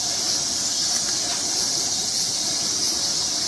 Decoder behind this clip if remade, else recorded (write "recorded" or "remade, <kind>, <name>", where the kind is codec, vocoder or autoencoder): recorded